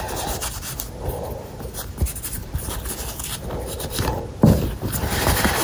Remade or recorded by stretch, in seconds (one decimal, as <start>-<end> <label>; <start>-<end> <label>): 0.0-2.4 recorded; 2.4-4.2 remade; 4.2-5.6 recorded

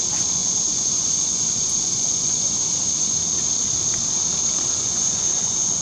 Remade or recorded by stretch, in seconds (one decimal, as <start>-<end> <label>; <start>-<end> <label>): 0.0-3.2 remade; 3.2-4.7 recorded; 4.7-5.8 remade